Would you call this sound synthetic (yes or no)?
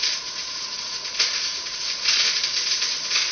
yes